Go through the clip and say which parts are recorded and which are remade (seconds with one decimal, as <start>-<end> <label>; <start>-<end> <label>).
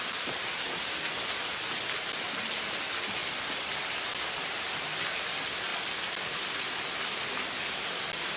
0.0-8.4 recorded